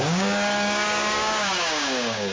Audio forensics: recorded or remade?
remade